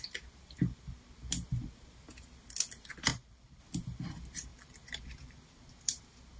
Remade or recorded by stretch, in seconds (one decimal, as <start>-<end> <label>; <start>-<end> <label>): 0.0-3.1 recorded; 3.1-3.6 remade; 3.6-4.5 recorded; 4.5-5.7 remade; 5.7-6.4 recorded

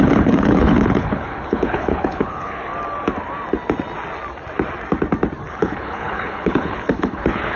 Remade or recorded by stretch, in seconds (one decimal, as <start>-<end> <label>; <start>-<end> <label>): 0.0-2.7 remade; 2.7-5.5 recorded; 5.5-7.6 remade

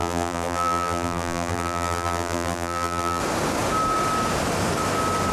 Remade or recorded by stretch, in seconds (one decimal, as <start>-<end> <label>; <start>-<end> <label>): 0.0-3.2 remade; 3.2-5.3 recorded

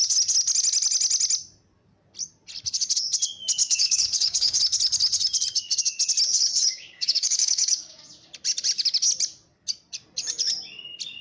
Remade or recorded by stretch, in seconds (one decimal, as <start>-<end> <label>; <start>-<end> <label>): 0.0-3.6 recorded; 3.6-4.6 remade; 4.6-6.3 recorded; 6.3-8.0 remade; 8.0-11.2 recorded